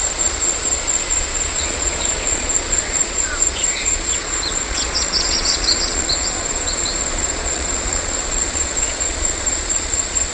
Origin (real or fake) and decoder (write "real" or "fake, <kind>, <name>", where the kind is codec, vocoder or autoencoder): fake, vocoder, Vocos